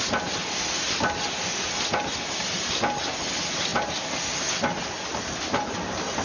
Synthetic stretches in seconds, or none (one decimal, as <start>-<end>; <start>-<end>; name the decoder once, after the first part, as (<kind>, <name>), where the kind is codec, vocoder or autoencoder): none